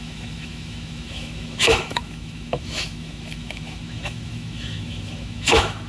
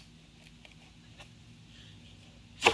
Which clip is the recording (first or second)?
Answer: second